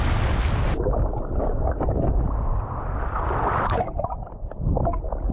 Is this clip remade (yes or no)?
no